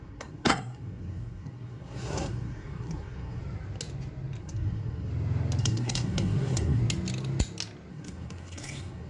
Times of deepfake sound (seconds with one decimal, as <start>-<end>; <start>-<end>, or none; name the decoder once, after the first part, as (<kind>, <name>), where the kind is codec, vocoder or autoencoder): 0.0-3.4 (codec, SNAC); 4.4-5.1; 5.6-6.8; 7.9-9.1

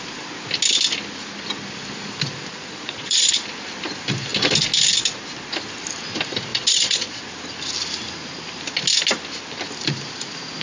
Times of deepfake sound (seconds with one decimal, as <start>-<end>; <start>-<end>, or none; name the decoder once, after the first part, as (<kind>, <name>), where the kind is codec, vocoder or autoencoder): 2.5-3.3 (vocoder, Vocos); 6.5-7.2

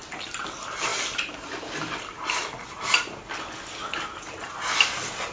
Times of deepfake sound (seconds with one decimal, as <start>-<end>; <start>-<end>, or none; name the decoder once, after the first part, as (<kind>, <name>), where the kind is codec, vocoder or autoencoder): none